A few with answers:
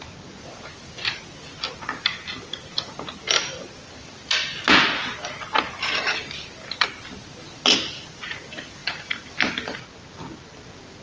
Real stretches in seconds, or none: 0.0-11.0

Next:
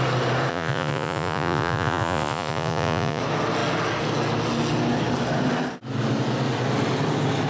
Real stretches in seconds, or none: 0.0-0.5; 3.2-7.5

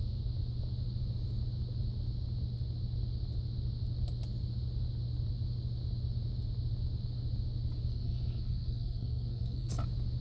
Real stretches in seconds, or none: 0.0-7.9; 9.7-10.2

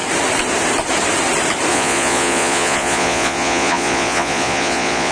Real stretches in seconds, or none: 0.0-1.7

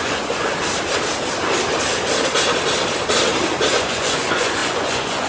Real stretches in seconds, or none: 0.5-3.7

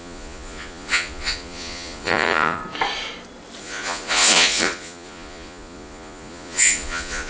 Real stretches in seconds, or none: 2.6-3.6

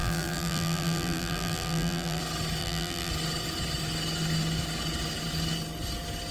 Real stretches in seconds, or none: 2.2-2.6; 3.1-6.3